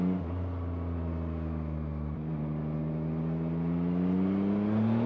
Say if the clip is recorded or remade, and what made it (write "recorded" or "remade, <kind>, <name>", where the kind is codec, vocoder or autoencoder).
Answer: recorded